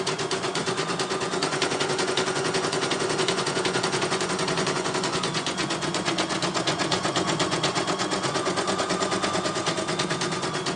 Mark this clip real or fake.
fake